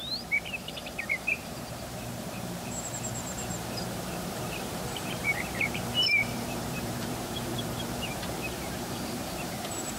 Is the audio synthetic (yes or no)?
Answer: yes